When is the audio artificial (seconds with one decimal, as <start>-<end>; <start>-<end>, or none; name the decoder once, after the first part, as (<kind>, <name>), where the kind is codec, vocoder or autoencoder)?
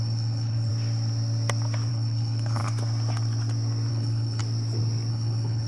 0.0-0.7 (codec, HILCodec); 1.9-2.6; 3.9-4.4; 5.1-5.7